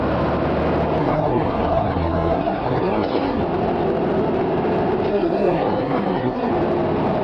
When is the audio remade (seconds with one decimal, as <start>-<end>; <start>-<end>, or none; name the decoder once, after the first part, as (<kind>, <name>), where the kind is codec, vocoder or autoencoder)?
1.0-3.4 (codec, SNAC); 5.1-6.5